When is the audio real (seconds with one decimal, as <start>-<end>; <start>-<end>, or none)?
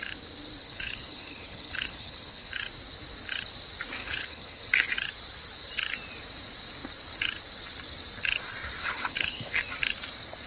0.0-0.6; 2.5-4.0; 4.7-8.8; 9.6-10.5